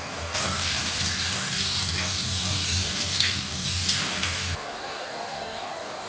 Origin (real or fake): fake